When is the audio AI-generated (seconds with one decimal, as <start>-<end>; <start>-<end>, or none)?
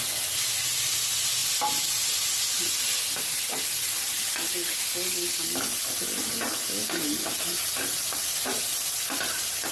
6.8-9.7